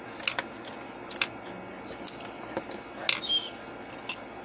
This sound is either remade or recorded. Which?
recorded